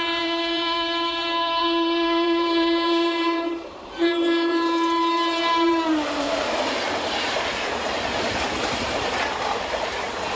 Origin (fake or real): fake